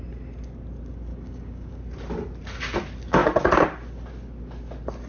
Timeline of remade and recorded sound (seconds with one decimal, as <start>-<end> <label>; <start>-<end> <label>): 0.0-1.1 recorded; 1.1-1.8 remade; 1.8-5.1 recorded